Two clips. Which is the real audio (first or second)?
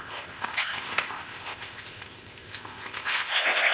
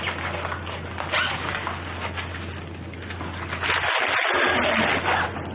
second